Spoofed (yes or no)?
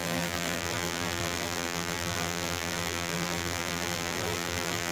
yes